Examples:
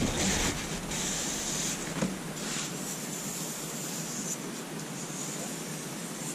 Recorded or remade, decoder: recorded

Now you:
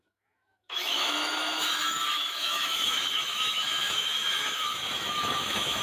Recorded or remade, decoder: remade, autoencoder, DAC-VAE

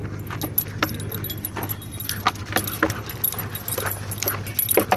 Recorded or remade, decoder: recorded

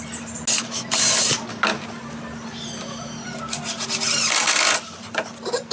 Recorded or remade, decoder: recorded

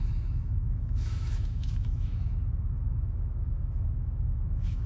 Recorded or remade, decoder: remade, autoencoder, DAC-VAE